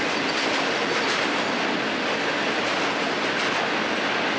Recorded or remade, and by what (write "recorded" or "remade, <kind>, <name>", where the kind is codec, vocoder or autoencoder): recorded